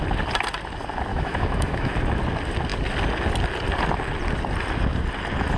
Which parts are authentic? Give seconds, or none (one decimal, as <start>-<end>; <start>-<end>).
0.0-1.1; 1.9-5.6